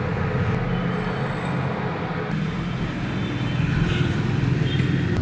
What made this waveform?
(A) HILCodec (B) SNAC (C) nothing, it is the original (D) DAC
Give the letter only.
C